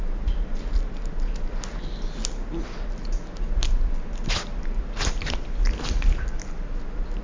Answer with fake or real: real